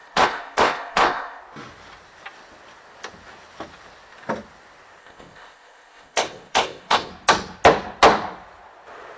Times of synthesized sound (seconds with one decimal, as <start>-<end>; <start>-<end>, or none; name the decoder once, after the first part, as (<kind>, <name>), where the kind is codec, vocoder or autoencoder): 0.0-1.4 (codec, ZipCodec); 5.0-7.1